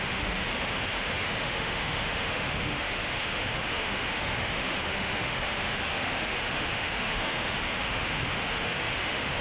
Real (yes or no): no